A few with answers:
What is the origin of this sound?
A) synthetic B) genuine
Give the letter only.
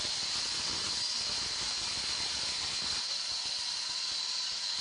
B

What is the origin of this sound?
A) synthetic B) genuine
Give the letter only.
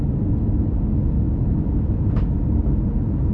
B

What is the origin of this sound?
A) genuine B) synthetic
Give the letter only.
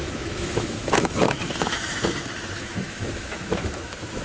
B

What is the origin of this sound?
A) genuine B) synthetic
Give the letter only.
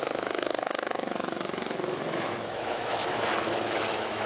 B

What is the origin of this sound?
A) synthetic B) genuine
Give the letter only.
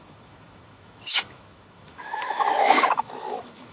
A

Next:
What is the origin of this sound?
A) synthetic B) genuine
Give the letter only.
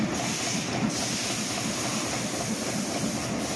B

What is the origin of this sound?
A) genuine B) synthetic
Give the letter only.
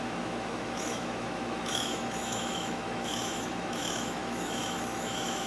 B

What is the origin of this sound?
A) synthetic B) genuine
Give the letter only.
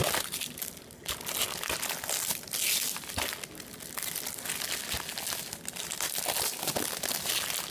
B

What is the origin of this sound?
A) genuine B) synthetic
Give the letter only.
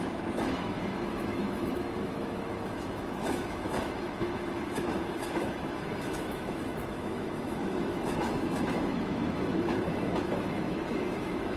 B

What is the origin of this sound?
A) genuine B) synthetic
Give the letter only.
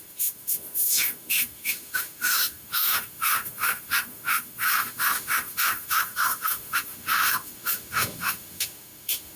B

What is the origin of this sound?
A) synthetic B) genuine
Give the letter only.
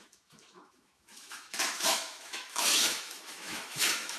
A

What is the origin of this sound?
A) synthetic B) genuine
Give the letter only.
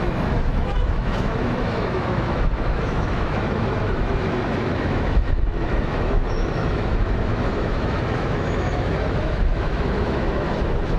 A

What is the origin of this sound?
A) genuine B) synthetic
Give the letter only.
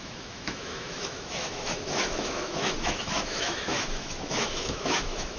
B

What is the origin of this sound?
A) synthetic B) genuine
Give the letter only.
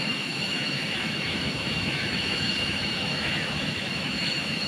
A